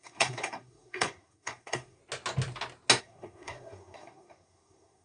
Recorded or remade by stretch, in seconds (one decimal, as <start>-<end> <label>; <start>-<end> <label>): 0.0-2.0 remade; 2.0-3.0 recorded; 3.0-5.0 remade